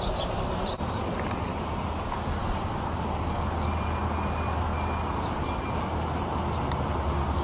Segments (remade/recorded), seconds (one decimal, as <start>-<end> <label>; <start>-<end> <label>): 0.0-7.4 recorded